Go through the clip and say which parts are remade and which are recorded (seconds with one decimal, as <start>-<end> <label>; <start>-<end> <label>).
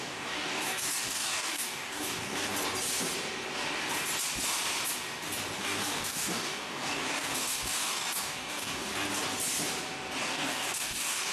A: 0.0-2.5 remade; 2.5-5.6 recorded; 5.6-8.9 remade; 8.9-10.2 recorded; 10.2-11.3 remade